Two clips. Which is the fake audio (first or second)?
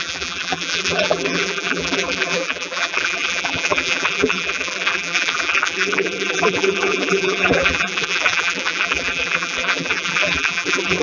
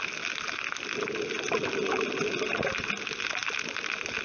first